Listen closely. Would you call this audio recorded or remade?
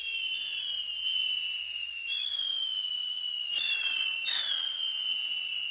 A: remade